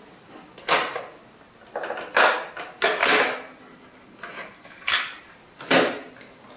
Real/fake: real